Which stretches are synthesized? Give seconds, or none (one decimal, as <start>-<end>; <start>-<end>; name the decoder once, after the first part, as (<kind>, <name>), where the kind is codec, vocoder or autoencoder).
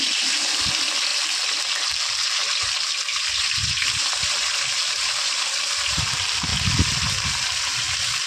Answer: 0.0-2.4 (vocoder, BigVGAN v2); 5.6-6.5; 7.6-8.3